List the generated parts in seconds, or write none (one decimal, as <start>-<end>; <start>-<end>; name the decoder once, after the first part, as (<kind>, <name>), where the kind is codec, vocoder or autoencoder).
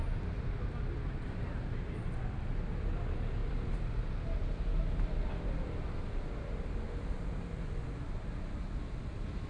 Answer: none